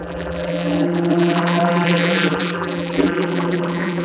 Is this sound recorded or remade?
remade